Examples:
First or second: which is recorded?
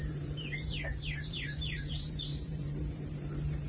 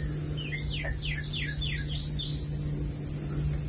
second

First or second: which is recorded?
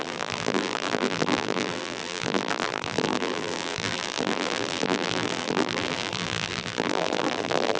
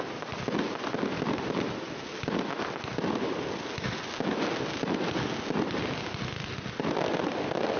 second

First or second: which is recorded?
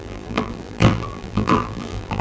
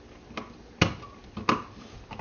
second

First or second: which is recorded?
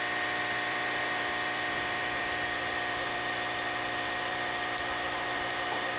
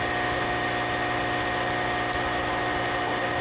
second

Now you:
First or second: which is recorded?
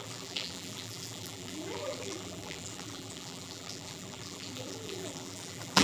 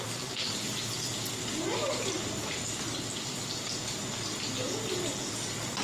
second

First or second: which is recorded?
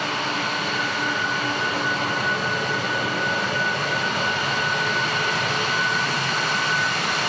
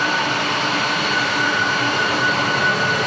first